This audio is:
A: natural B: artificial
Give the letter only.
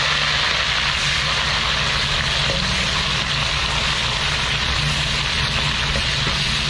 A